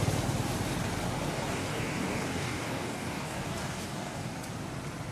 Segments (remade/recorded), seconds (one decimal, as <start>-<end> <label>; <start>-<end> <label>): 0.0-1.3 recorded; 1.3-4.3 remade; 4.3-5.1 recorded